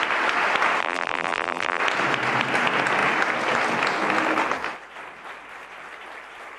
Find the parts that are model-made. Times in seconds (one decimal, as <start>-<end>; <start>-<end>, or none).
0.8-1.8